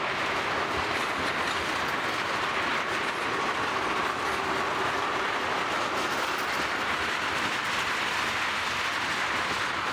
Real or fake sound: real